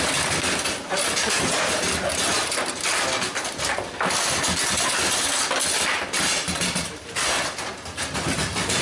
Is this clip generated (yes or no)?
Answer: no